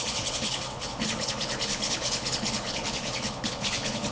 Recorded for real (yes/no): no